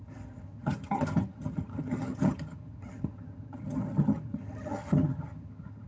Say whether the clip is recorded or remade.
remade